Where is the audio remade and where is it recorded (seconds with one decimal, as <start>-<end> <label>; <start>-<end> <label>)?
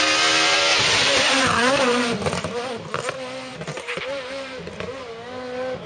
0.0-0.7 recorded; 0.7-1.3 remade; 1.3-3.5 recorded; 3.5-4.6 remade; 4.6-5.9 recorded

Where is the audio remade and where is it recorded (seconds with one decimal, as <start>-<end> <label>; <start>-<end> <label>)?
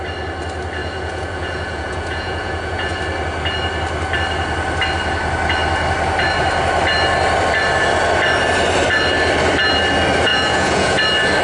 0.0-0.8 recorded; 0.8-3.0 remade; 3.0-10.3 recorded; 10.3-11.0 remade; 11.0-11.4 recorded